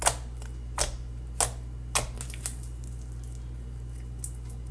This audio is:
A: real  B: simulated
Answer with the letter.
A